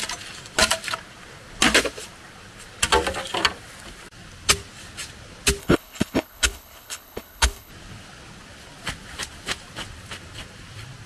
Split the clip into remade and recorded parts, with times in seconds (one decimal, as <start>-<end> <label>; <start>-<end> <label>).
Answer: 0.0-5.6 recorded; 5.6-7.7 remade; 7.7-11.1 recorded